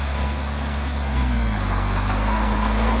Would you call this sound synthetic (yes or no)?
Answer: yes